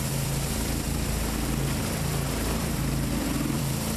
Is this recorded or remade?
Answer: remade